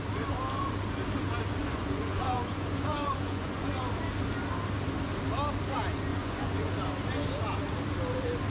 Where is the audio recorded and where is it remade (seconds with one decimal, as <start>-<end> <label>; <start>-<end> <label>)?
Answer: 0.0-1.6 recorded; 1.6-3.8 remade; 3.8-6.1 recorded; 6.1-6.7 remade; 6.7-8.5 recorded